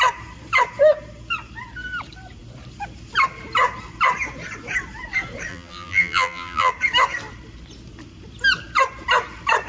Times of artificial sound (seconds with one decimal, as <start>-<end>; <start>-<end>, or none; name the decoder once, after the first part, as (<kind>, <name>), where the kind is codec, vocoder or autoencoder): 5.5-6.7 (vocoder, BigVGAN v2)